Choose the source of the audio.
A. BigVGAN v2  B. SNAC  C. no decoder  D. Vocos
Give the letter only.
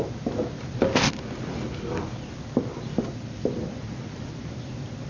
C